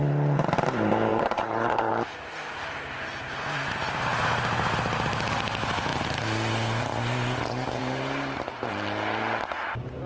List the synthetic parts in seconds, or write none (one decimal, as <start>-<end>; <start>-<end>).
1.1-1.9